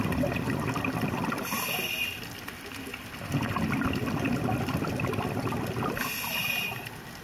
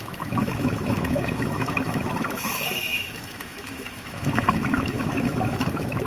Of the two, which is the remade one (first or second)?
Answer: second